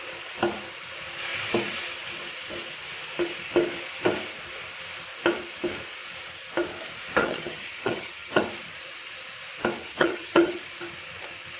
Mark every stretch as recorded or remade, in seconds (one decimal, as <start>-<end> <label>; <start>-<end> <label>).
0.0-7.2 recorded; 7.2-8.4 remade; 8.4-9.8 recorded; 9.8-10.6 remade; 10.6-11.6 recorded